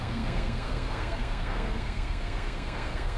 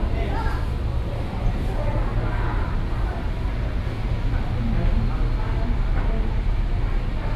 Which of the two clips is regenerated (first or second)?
first